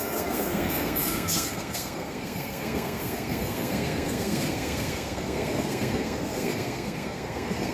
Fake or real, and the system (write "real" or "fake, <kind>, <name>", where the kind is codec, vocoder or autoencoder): fake, codec, SNAC